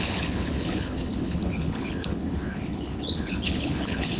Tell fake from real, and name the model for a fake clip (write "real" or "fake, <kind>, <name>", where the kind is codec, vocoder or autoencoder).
fake, codec, HILCodec